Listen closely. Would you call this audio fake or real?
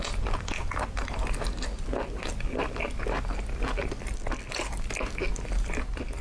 real